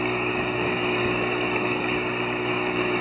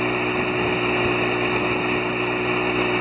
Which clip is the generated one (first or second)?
first